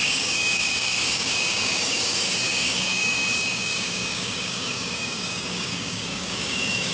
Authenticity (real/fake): fake